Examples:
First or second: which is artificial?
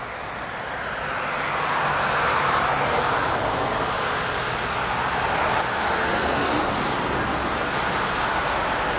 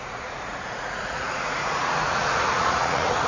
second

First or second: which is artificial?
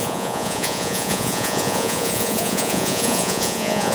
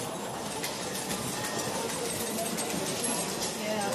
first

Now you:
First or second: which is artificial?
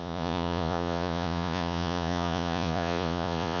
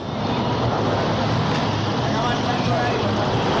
first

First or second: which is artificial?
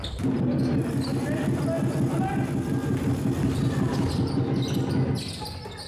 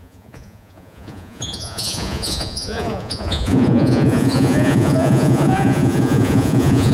second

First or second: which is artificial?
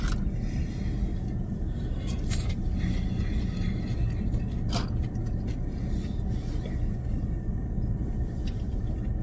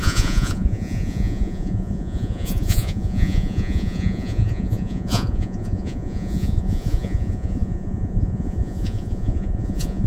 second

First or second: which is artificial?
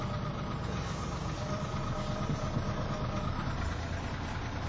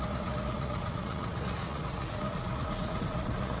second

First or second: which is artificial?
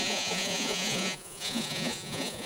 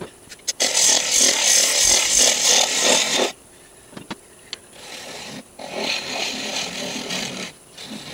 first